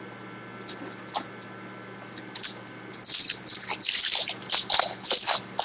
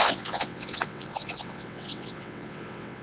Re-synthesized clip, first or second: second